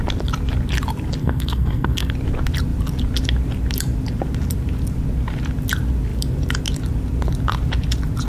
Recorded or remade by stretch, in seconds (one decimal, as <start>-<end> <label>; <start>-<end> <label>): 0.0-1.2 recorded; 1.2-2.1 remade; 2.1-8.3 recorded